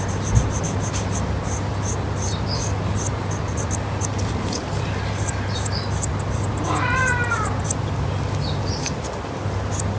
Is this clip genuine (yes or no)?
yes